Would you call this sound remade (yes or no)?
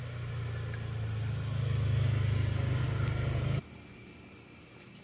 no